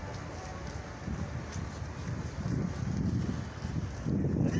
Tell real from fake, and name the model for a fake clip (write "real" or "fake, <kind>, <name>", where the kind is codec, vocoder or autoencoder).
real